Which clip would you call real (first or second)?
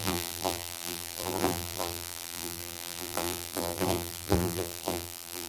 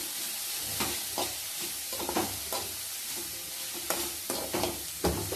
second